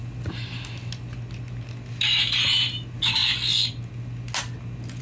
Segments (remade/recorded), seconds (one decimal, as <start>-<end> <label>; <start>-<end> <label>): 0.0-5.0 recorded